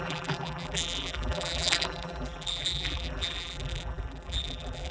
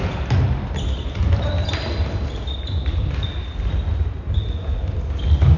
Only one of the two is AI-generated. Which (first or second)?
first